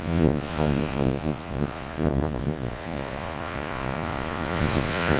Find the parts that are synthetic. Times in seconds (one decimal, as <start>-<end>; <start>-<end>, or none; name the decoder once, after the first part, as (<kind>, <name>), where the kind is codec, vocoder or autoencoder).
0.0-5.2 (vocoder, Vocos)